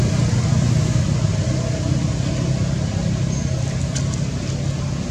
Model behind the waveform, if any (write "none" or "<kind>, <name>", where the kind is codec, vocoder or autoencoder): none